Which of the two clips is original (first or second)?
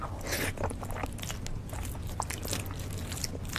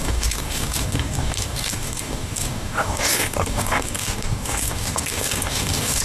first